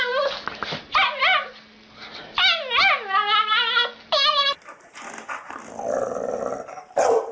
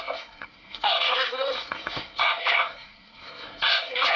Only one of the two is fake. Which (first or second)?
second